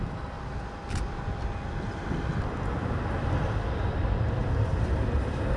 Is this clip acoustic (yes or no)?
yes